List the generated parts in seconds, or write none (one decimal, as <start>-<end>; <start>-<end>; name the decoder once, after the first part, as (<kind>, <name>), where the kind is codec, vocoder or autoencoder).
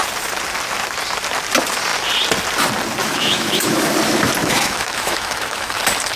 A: 3.0-3.9 (autoencoder, DAC-VAE); 4.4-5.8